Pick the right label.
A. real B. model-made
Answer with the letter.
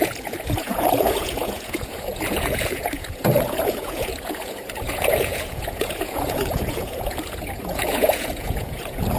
B